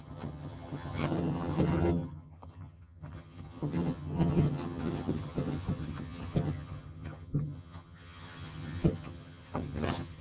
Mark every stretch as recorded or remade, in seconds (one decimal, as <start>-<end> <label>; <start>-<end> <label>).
0.0-10.2 remade

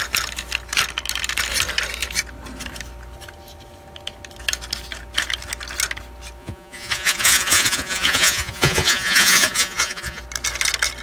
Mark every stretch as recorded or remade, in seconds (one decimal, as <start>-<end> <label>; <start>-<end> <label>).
0.0-6.4 recorded; 6.4-10.2 remade; 10.2-11.0 recorded

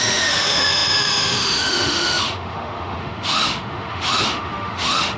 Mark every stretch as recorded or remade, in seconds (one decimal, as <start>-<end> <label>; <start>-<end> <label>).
0.0-5.2 remade

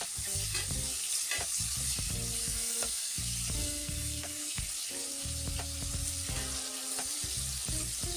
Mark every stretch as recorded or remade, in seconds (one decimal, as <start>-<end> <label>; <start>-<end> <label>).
0.0-2.4 recorded; 2.4-3.2 remade; 3.2-3.6 recorded; 3.6-4.6 remade; 4.6-8.2 recorded

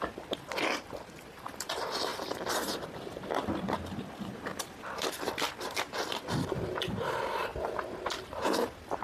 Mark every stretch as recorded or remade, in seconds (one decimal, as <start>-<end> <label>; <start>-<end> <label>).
0.0-7.5 remade; 7.5-8.2 recorded; 8.2-9.0 remade

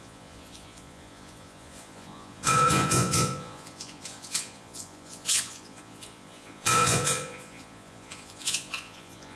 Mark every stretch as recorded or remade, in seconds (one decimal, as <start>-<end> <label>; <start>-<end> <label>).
0.0-9.4 remade

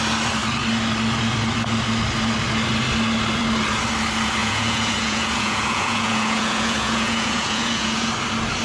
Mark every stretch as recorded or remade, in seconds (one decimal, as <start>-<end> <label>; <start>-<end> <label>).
0.0-4.4 recorded; 4.4-8.1 remade; 8.1-8.6 recorded